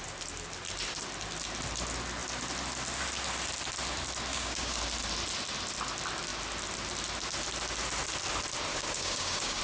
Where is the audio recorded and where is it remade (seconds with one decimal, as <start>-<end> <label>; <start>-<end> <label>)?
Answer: 0.0-4.3 recorded; 4.3-4.8 remade; 4.8-8.7 recorded; 8.7-9.6 remade